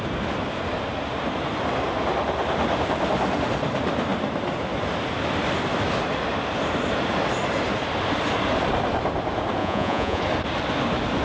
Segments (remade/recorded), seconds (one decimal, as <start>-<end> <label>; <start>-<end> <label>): 0.0-9.6 recorded; 9.6-10.2 remade; 10.2-11.2 recorded